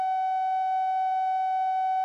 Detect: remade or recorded recorded